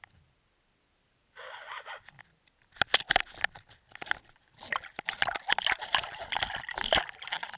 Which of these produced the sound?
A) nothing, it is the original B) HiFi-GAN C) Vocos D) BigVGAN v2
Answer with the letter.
A